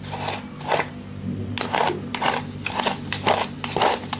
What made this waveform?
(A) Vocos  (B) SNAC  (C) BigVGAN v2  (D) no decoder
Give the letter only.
D